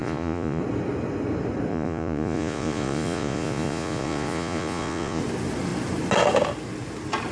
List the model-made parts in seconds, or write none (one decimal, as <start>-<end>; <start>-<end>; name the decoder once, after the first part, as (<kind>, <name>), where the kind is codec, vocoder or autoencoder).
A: 0.0-0.6 (vocoder, Vocos); 1.7-5.2